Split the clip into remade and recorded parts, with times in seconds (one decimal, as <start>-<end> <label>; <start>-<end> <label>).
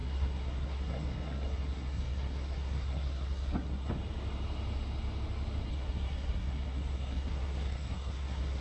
0.0-3.9 remade; 3.9-5.7 recorded; 5.7-8.6 remade